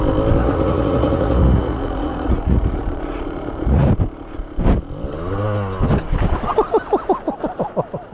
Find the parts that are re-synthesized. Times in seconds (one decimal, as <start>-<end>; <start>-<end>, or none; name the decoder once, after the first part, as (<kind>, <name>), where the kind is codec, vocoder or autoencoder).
0.4-3.9 (vocoder, Vocos)